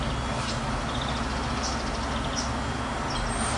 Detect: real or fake real